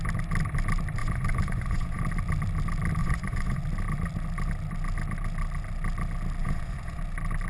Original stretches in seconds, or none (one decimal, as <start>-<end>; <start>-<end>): 0.0-1.0; 2.0-3.0; 3.6-6.4; 7.0-7.5